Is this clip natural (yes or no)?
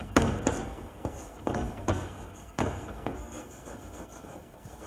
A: no